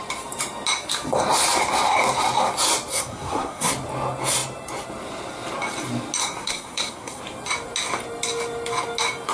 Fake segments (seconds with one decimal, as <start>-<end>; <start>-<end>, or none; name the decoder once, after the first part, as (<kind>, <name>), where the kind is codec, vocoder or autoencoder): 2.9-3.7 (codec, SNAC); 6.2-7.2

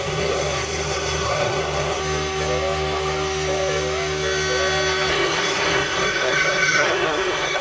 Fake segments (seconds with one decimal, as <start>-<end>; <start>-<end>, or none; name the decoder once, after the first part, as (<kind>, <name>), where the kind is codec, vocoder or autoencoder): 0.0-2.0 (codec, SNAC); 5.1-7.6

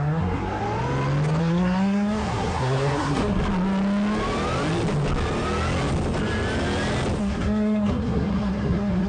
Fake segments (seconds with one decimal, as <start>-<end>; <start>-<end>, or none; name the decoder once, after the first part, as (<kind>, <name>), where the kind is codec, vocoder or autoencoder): 0.0-0.6 (codec, SNAC); 1.4-3.4; 7.2-9.1